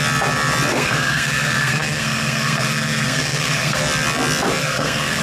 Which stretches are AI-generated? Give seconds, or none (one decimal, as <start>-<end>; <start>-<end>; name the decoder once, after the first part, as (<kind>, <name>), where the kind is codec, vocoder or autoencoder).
0.7-3.8 (codec, SNAC); 4.6-5.2